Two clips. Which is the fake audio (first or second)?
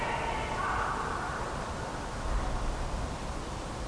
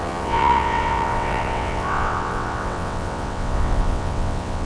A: second